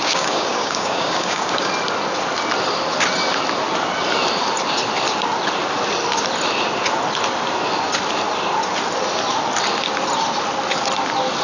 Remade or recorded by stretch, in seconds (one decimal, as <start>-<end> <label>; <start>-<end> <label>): 0.0-1.7 remade; 1.7-11.4 recorded

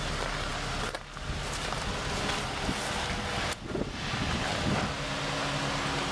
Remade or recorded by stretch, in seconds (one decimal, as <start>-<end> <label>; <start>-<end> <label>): 0.0-6.1 recorded

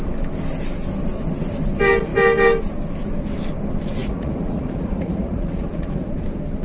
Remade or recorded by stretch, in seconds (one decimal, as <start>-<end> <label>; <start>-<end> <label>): 0.0-4.0 recorded; 4.0-6.1 remade; 6.1-6.6 recorded

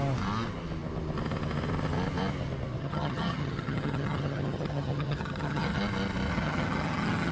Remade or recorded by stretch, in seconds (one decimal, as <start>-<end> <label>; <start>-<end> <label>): 0.0-2.8 recorded; 2.8-5.8 remade; 5.8-6.3 recorded; 6.3-7.3 remade

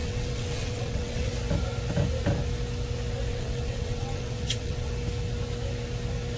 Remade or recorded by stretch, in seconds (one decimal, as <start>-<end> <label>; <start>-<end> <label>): 0.0-1.3 remade; 1.3-3.3 recorded; 3.3-4.9 remade; 4.9-6.4 recorded

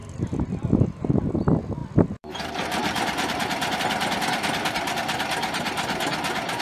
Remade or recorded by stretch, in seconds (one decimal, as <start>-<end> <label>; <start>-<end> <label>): 0.0-1.3 remade; 1.3-1.8 recorded; 1.8-3.8 remade; 3.8-6.6 recorded

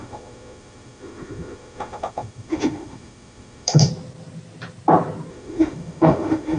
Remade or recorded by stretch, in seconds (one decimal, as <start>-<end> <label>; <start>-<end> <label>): 0.0-3.9 remade; 3.9-5.3 recorded; 5.3-6.6 remade